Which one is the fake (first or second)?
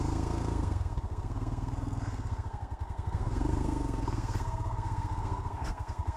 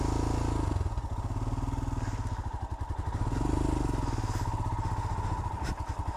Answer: first